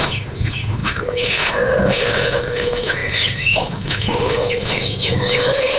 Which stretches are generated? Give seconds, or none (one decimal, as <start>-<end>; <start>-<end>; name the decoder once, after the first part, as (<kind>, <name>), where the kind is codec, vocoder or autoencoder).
0.0-5.8 (autoencoder, DAC-VAE)